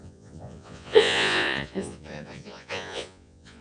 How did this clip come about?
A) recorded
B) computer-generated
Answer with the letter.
B